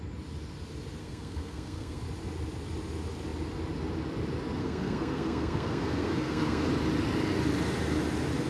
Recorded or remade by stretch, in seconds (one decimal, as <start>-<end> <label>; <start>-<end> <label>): 0.0-1.0 recorded; 1.0-2.0 remade; 2.0-4.6 recorded; 4.6-6.7 remade; 6.7-8.5 recorded